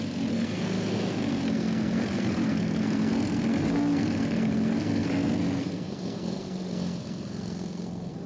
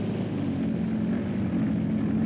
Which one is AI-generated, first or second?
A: first